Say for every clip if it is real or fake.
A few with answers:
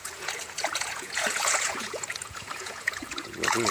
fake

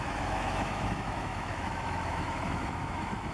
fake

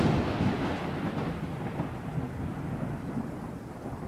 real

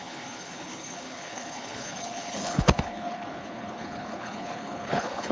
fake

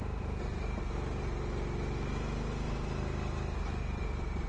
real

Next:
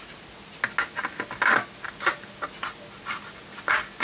real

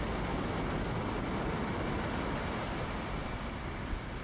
real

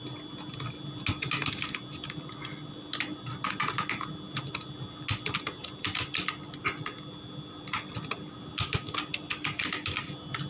real